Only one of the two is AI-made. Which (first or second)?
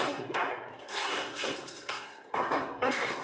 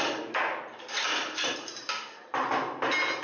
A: first